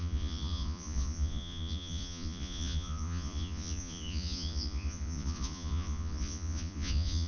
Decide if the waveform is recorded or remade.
remade